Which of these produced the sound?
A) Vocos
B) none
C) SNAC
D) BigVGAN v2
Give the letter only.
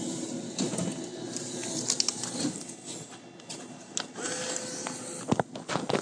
B